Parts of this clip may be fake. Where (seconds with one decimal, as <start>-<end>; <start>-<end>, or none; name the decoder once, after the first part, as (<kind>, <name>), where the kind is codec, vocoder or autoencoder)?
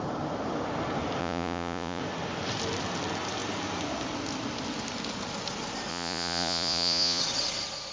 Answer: 1.2-2.0 (vocoder, Vocos); 5.9-7.2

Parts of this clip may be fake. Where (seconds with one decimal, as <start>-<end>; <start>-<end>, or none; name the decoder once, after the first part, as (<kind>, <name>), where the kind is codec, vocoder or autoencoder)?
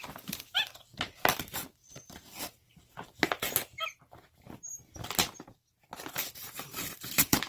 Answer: 0.0-7.5 (vocoder, BigVGAN v2)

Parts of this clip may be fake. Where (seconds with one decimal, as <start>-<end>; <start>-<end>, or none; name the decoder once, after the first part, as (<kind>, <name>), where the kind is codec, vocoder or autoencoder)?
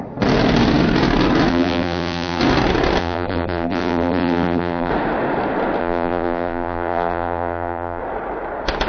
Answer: 1.5-2.4 (vocoder, BigVGAN v2); 3.0-4.9; 5.8-8.0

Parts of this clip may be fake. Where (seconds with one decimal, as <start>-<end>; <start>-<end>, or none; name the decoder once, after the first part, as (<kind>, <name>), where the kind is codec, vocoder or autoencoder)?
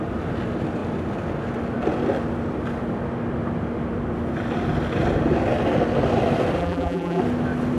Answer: 6.6-7.2 (vocoder, BigVGAN v2)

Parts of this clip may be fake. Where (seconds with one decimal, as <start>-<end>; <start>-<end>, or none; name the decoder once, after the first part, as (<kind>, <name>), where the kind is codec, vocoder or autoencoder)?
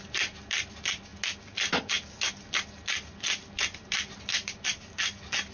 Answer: none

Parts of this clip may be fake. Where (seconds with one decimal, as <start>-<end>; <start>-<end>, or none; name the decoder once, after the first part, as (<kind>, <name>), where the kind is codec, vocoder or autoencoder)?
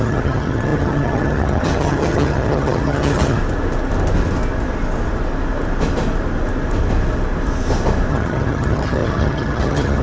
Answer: 0.0-3.4 (vocoder, HiFi-GAN); 8.1-10.0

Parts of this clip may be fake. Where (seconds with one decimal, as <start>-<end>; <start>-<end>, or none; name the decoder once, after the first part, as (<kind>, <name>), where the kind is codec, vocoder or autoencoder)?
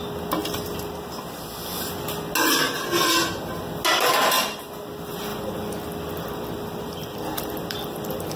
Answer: 0.4-1.0 (vocoder, BigVGAN v2); 5.3-8.4